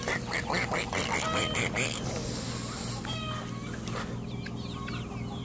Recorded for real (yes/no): yes